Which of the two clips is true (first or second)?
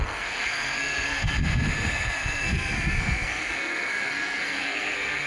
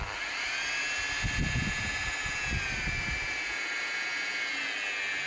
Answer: second